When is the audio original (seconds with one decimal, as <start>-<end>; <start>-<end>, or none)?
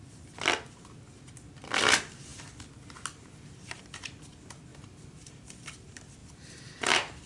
0.0-3.2; 3.8-4.7; 5.4-6.2